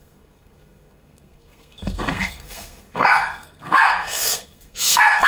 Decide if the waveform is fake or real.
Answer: fake